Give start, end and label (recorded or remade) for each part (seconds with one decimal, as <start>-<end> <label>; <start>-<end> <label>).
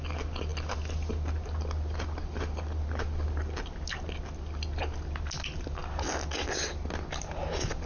0.0-7.9 recorded